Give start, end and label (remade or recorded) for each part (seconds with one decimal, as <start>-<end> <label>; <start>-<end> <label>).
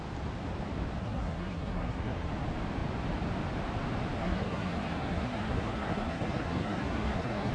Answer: 0.0-1.0 recorded; 1.0-2.3 remade; 2.3-4.2 recorded; 4.2-7.5 remade